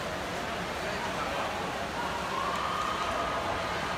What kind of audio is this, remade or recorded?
recorded